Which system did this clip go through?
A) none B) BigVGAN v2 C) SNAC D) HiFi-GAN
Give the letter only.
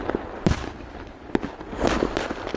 A